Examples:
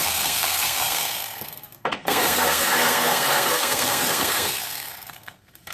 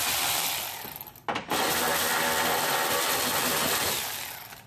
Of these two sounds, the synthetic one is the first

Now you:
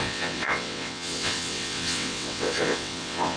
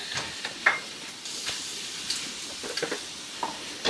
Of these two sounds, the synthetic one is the first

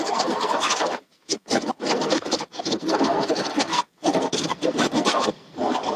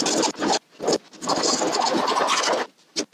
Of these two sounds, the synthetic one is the first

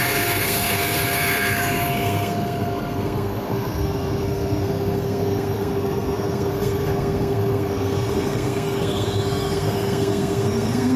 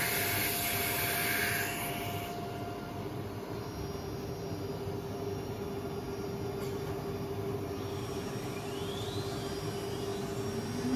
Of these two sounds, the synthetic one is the first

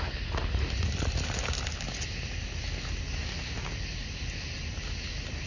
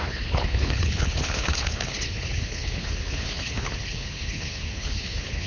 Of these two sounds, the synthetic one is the second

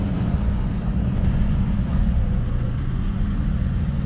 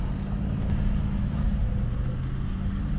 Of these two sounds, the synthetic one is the first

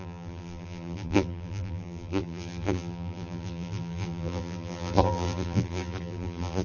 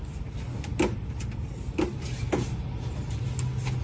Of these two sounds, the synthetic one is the first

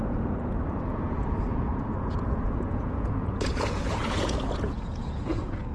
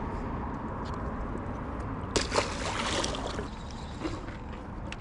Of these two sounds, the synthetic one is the first